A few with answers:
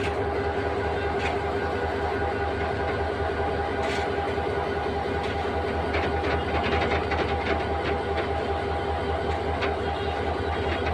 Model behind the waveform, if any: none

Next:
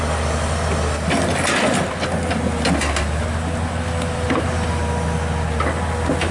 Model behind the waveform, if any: none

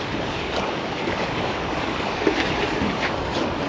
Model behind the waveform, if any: codec, DAC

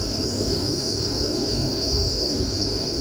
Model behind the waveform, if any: codec, DAC